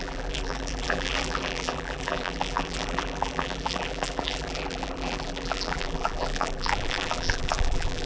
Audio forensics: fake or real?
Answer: fake